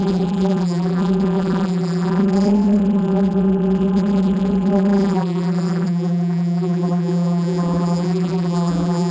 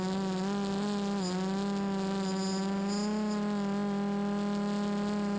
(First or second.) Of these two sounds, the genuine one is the second